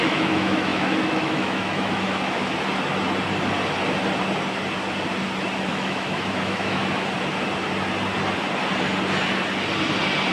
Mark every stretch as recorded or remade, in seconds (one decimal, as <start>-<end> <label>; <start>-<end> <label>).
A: 0.0-2.5 remade; 2.5-5.7 recorded; 5.7-6.8 remade; 6.8-10.3 recorded